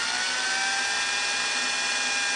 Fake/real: real